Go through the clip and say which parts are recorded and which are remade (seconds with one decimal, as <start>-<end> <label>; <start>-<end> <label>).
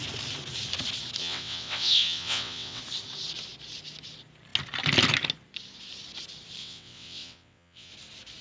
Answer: 0.0-1.2 recorded; 1.2-2.8 remade; 2.8-6.6 recorded; 6.6-7.9 remade; 7.9-8.4 recorded